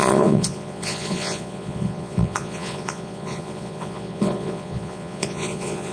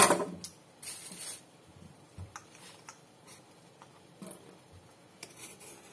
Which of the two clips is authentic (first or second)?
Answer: second